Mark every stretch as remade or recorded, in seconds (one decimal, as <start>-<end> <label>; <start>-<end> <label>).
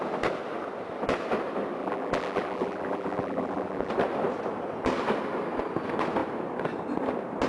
0.0-1.8 recorded; 1.8-3.9 remade; 3.9-7.5 recorded